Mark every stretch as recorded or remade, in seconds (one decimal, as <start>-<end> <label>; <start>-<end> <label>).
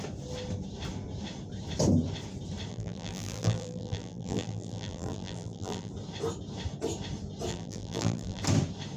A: 0.0-2.7 recorded; 2.7-5.9 remade; 5.9-7.5 recorded; 7.5-8.4 remade; 8.4-9.0 recorded